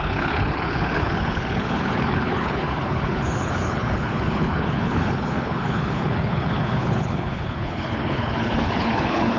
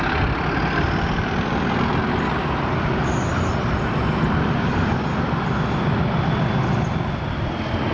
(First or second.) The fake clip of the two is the first